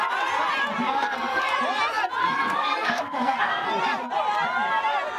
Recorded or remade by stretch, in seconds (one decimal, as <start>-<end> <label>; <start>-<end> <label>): 0.0-0.8 recorded; 0.8-1.4 remade; 1.4-2.2 recorded; 2.2-3.7 remade; 3.7-5.2 recorded